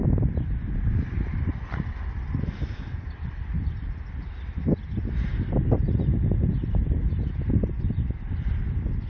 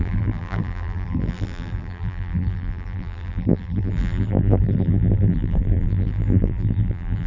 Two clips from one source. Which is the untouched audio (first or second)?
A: first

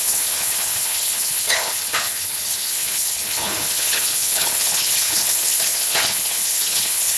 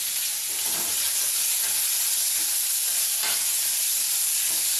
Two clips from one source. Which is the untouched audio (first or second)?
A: second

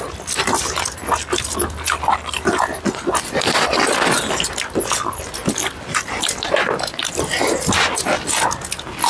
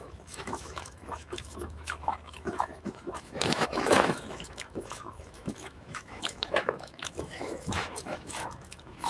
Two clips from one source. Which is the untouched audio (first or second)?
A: first